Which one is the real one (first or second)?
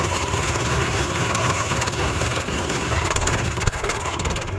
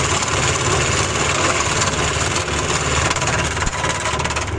second